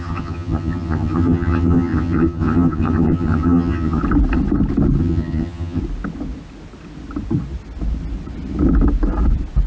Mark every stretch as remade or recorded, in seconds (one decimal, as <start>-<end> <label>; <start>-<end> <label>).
0.0-4.0 remade; 4.0-5.0 recorded; 5.0-5.8 remade; 5.8-9.7 recorded